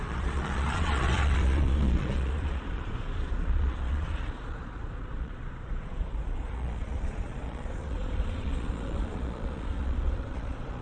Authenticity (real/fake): fake